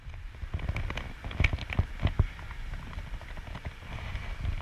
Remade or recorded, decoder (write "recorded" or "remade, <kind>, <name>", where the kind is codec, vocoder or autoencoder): recorded